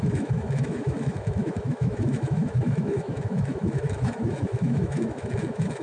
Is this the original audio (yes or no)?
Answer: no